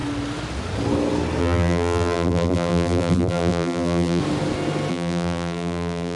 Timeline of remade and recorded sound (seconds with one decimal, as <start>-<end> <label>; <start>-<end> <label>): 0.0-1.4 recorded; 1.4-4.2 remade; 4.2-4.9 recorded; 4.9-6.2 remade